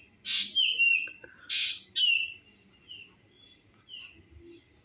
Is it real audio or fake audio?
real